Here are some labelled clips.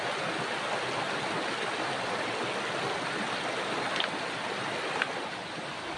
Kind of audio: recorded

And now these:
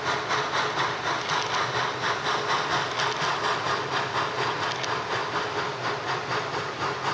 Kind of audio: recorded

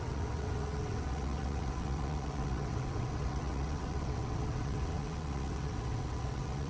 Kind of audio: remade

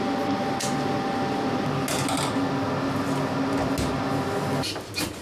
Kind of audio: recorded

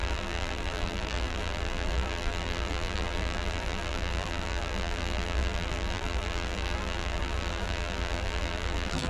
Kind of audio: remade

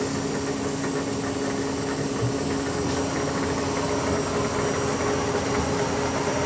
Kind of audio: recorded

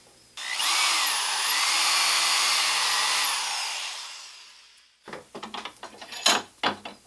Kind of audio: recorded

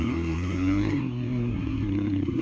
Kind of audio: remade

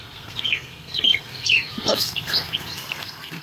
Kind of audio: remade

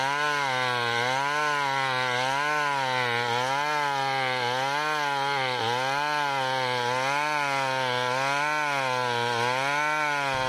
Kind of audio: recorded